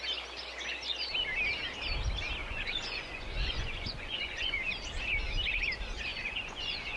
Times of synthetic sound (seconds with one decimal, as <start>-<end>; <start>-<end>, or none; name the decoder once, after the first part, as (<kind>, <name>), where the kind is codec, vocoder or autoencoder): 2.4-4.7 (vocoder, Vocos); 6.1-7.0